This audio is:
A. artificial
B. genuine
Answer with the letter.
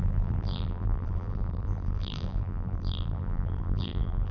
A